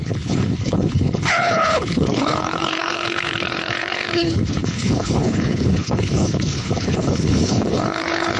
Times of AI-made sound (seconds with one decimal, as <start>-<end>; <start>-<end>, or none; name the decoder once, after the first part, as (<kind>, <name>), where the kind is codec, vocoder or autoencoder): 0.0-8.4 (codec, HILCodec)